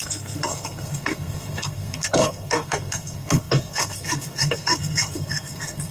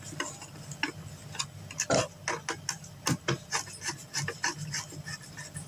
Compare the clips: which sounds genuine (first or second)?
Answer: second